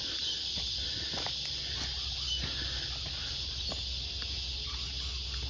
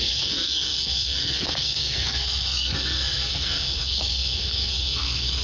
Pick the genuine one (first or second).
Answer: first